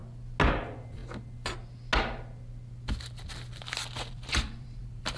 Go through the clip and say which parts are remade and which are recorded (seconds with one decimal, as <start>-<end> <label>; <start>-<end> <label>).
0.0-0.5 recorded; 0.5-1.0 remade; 1.0-4.1 recorded; 4.1-5.2 remade

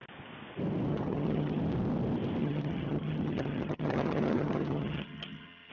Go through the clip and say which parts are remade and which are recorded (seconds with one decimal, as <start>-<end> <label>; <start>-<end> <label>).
0.0-0.9 recorded; 0.9-1.6 remade; 1.6-2.4 recorded; 2.4-5.7 remade

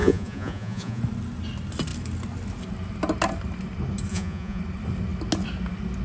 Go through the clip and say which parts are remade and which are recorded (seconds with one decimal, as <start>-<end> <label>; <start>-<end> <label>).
0.0-1.0 remade; 1.0-4.1 recorded; 4.1-4.6 remade; 4.6-6.0 recorded

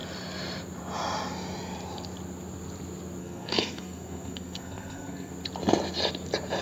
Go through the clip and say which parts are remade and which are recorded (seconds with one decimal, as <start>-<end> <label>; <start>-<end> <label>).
0.0-3.2 recorded; 3.2-5.3 remade; 5.3-6.6 recorded